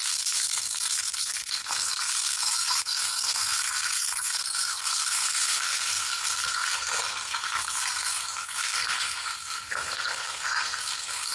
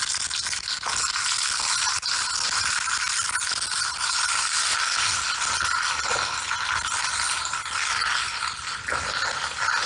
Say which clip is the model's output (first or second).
first